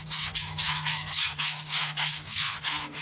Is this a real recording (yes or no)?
no